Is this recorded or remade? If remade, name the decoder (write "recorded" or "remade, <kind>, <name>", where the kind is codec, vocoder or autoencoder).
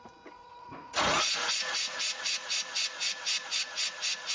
remade, vocoder, Vocos